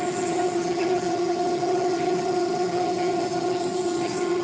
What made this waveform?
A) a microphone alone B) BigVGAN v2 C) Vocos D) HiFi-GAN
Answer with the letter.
D